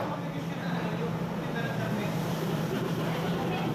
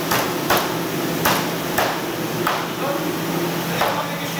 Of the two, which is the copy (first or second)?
first